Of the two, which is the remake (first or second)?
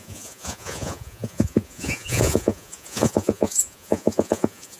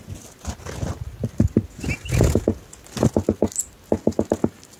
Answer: first